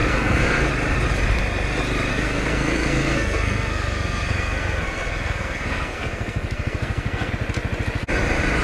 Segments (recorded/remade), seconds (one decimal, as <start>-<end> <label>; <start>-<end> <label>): 0.0-0.7 remade; 0.7-2.1 recorded; 2.1-7.3 remade; 7.3-8.6 recorded